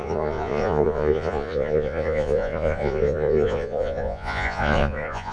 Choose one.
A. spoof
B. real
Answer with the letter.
A